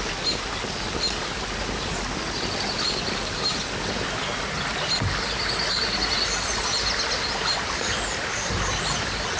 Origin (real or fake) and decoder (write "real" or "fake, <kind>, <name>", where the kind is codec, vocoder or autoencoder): real